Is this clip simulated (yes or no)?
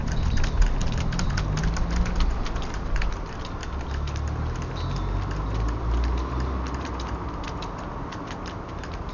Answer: no